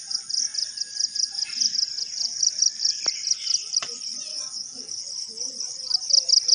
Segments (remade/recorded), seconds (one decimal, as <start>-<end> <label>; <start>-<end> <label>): 0.0-4.3 recorded; 4.3-5.0 remade; 5.0-6.5 recorded